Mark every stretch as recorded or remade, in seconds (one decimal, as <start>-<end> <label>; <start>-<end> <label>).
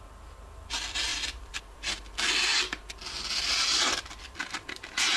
0.0-1.1 recorded; 1.1-2.0 remade; 2.0-5.2 recorded